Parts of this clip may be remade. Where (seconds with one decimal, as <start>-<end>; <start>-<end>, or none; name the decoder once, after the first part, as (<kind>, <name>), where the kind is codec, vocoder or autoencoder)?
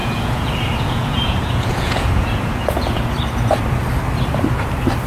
0.0-3.1 (vocoder, Vocos)